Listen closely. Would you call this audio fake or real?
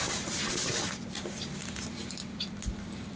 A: real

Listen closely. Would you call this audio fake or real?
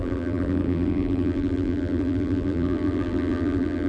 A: fake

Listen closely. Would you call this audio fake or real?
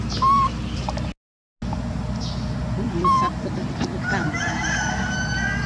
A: real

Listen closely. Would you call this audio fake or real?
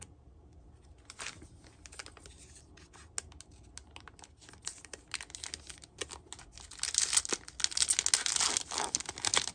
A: real